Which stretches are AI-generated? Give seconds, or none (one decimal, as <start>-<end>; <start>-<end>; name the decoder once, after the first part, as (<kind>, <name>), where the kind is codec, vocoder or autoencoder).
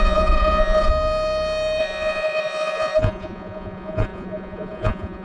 0.0-0.9 (vocoder, Vocos); 1.8-5.2